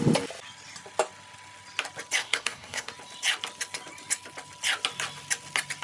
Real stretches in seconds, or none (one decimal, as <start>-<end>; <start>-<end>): 0.0-2.2; 2.9-5.8